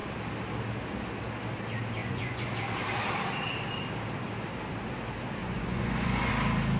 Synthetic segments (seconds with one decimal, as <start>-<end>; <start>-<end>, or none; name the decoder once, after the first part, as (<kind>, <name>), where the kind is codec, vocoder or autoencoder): 2.0-2.5 (vocoder, Vocos); 5.4-6.3